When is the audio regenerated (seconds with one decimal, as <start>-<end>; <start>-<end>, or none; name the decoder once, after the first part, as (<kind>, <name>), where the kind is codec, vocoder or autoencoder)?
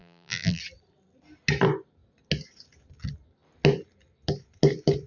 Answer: 0.0-0.6 (vocoder, BigVGAN v2)